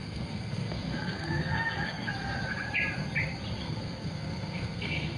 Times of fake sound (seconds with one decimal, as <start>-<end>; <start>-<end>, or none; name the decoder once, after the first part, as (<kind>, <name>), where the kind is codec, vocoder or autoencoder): 0.0-2.1 (codec, SNAC); 3.6-5.2